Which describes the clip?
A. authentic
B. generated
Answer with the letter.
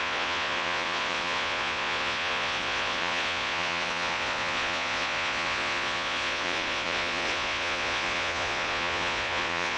B